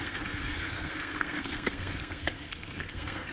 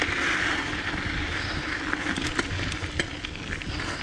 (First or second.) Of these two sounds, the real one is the second